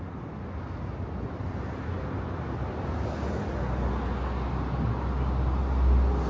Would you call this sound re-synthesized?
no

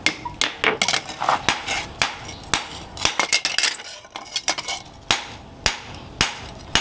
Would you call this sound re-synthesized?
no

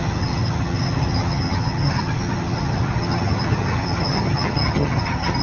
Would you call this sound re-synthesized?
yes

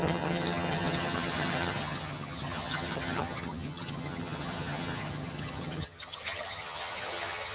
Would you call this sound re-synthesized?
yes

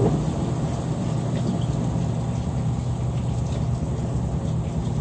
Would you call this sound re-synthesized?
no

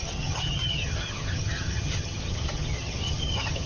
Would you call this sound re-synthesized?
yes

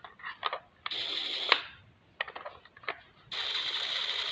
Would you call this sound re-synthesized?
no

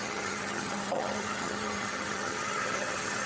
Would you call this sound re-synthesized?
yes